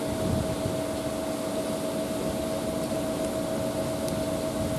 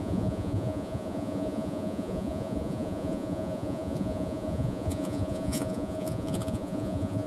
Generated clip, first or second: second